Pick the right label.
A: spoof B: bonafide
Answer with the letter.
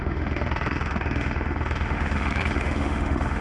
A